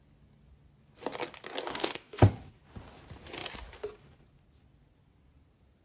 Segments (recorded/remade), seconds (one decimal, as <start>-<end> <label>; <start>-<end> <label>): 0.0-1.7 recorded; 1.7-2.2 remade; 2.2-5.8 recorded